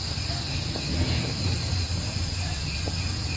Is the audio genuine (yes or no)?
yes